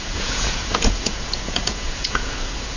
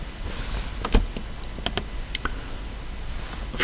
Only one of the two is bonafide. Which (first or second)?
second